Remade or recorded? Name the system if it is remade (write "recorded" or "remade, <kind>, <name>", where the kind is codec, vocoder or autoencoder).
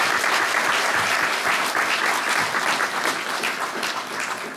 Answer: recorded